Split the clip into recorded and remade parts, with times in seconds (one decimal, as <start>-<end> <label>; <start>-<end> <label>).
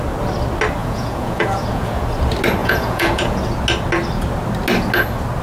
0.0-0.8 recorded; 0.8-2.0 remade; 2.0-2.6 recorded; 2.6-3.4 remade; 3.4-5.4 recorded